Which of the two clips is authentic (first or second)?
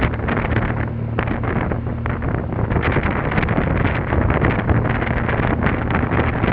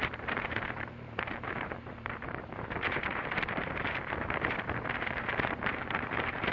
first